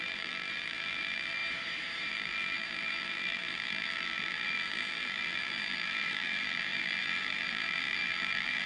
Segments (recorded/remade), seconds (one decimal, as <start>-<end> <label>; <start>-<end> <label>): 0.0-1.4 remade; 1.4-2.1 recorded; 2.1-8.7 remade